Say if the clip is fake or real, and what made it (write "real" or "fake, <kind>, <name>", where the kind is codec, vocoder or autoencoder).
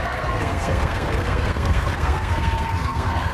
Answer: fake, codec, SNAC